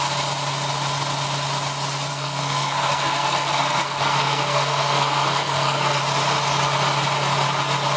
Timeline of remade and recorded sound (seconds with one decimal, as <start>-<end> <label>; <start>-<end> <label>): 0.0-2.1 recorded; 2.1-6.0 remade; 6.0-8.0 recorded

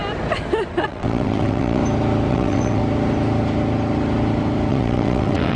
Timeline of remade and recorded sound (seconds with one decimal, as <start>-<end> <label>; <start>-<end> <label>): 0.0-0.8 recorded; 0.8-1.8 remade; 1.8-2.3 recorded; 2.3-2.8 remade; 2.8-4.7 recorded; 4.7-5.6 remade